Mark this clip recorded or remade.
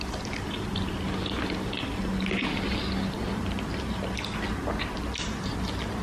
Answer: recorded